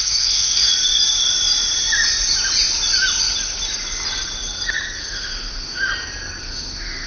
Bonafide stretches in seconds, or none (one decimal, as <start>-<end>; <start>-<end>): 0.7-5.0; 5.9-6.4